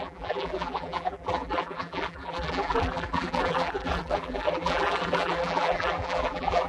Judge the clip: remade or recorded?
remade